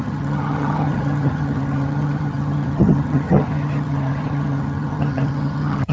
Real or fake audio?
fake